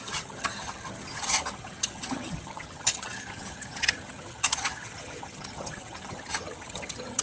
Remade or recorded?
remade